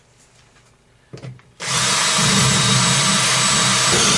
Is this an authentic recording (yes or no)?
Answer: yes